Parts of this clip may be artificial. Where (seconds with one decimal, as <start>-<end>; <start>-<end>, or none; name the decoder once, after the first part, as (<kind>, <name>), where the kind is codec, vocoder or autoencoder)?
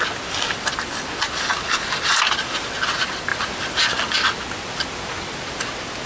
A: none